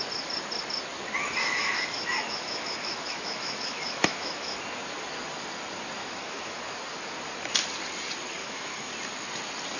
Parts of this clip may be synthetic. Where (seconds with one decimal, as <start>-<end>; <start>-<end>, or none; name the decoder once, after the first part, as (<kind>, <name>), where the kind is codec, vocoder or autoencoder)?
1.4-4.6 (autoencoder, DAC-VAE); 6.0-6.6; 8.4-8.9